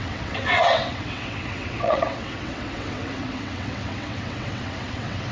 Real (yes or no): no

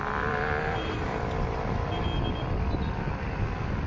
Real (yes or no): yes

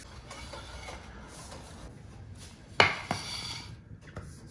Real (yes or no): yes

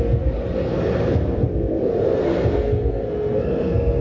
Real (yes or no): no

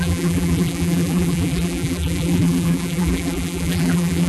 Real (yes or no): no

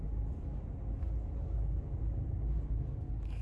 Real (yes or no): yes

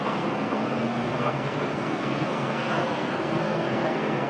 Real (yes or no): no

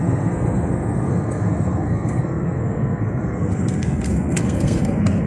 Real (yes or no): no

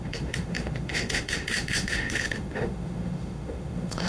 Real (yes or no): no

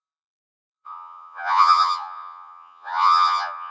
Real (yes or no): no